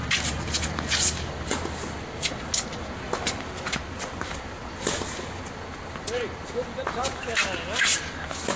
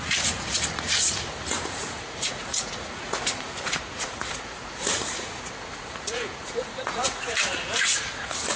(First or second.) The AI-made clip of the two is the second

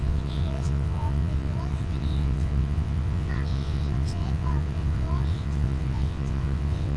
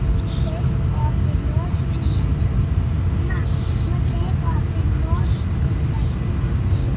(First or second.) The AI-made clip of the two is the first